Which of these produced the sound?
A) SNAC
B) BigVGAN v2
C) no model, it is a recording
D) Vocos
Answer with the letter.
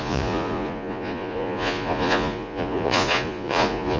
D